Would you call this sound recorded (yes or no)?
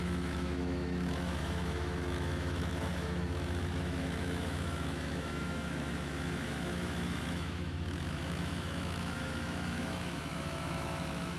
no